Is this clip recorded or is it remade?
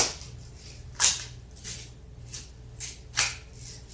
recorded